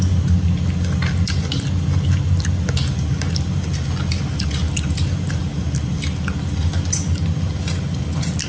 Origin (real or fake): real